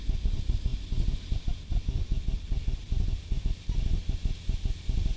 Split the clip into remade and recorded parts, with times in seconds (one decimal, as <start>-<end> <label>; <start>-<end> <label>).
0.0-5.2 recorded